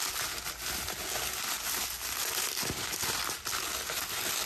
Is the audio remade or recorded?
recorded